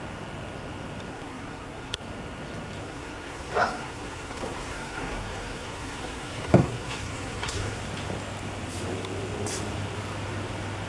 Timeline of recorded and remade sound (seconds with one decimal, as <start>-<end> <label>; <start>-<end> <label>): 0.0-1.1 recorded; 1.1-2.0 remade; 2.0-2.8 recorded; 2.8-7.8 remade; 7.8-10.9 recorded